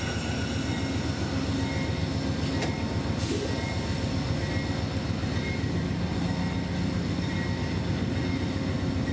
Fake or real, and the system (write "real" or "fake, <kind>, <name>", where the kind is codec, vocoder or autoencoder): real